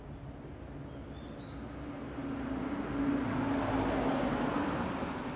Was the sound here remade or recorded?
recorded